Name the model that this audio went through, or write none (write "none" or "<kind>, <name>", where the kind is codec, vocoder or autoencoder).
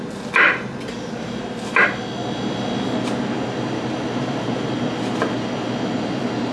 none